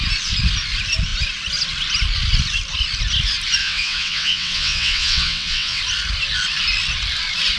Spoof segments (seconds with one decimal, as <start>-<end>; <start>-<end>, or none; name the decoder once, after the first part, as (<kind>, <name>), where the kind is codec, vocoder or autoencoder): 3.6-5.8 (vocoder, WaveNeXt)